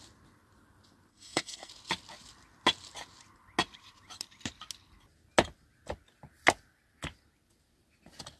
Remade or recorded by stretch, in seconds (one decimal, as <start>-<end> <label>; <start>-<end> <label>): 0.0-1.1 recorded; 1.1-1.7 remade; 1.7-8.4 recorded